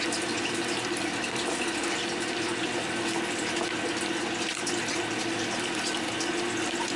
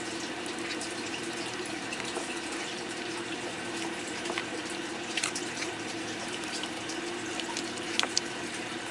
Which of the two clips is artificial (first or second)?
second